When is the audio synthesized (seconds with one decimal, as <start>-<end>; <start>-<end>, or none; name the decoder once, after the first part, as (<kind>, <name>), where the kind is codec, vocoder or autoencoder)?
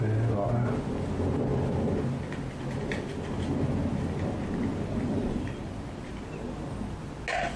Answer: none